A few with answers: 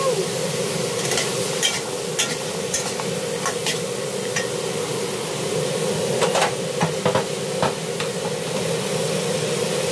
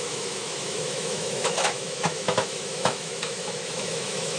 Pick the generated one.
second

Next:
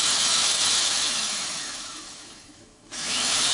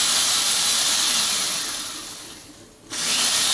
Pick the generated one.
first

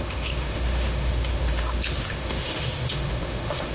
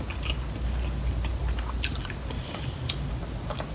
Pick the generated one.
first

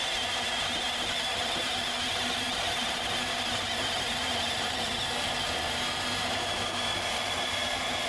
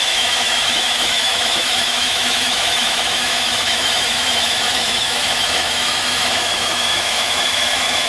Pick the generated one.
second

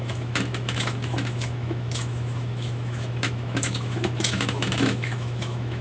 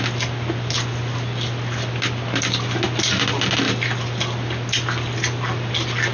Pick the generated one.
first